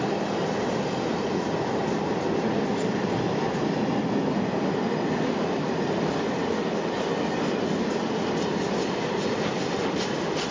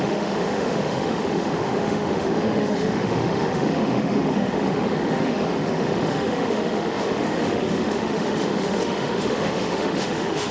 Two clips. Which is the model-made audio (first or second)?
second